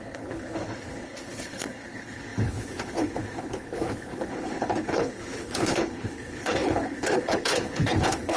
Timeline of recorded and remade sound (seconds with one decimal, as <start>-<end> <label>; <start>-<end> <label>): 0.0-8.4 remade